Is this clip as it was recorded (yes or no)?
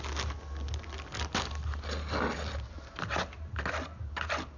yes